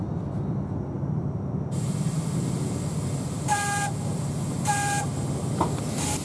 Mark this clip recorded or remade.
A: recorded